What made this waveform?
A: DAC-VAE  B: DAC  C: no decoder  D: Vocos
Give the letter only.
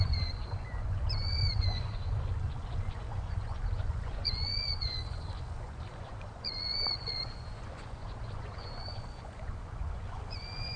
D